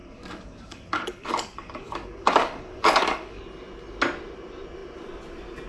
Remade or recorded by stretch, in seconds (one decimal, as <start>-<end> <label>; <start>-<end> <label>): 0.0-3.4 remade; 3.4-5.7 recorded